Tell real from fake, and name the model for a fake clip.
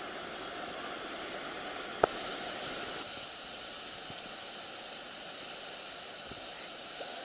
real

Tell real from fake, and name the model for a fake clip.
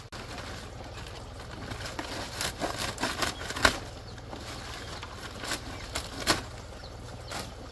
real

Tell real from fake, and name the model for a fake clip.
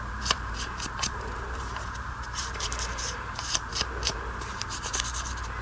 fake, vocoder, BigVGAN v2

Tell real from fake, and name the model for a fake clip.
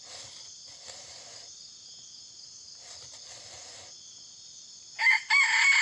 real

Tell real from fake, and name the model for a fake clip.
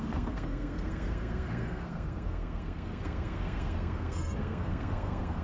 fake, codec, SNAC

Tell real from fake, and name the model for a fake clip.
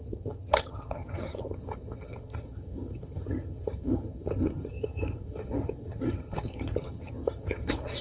fake, vocoder, HiFi-GAN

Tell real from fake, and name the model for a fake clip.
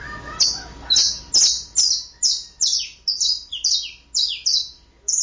real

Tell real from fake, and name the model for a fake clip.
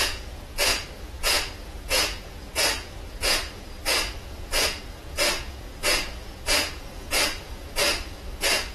fake, vocoder, Vocos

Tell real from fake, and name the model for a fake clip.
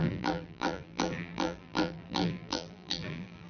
fake, vocoder, BigVGAN v2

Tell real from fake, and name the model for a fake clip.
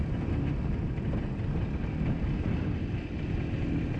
real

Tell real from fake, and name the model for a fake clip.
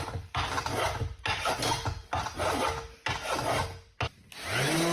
real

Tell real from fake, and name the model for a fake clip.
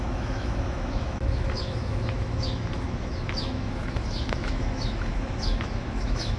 fake, autoencoder, DAC-VAE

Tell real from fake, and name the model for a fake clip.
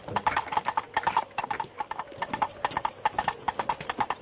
real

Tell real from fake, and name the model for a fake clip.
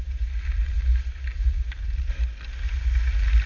real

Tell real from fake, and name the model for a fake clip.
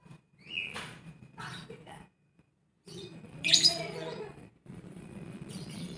fake, vocoder, Vocos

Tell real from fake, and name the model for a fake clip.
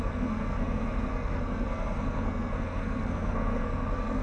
fake, codec, SNAC